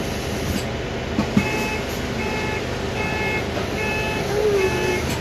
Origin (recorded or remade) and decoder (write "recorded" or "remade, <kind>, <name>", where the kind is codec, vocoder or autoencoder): recorded